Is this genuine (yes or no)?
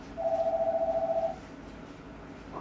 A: yes